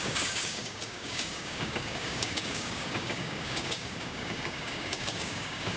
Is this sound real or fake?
fake